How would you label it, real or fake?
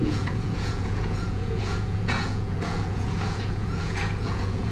fake